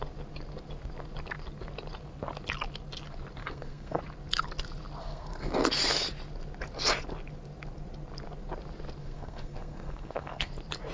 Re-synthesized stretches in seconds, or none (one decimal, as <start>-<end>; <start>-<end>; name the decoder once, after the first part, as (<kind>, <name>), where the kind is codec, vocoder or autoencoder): 3.4-4.0 (codec, SNAC); 5.0-5.5; 9.0-10.5